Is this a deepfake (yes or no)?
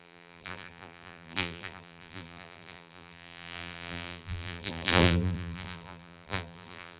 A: yes